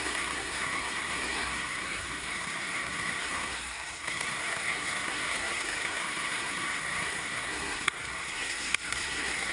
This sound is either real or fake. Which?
fake